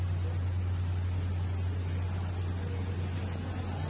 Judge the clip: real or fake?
real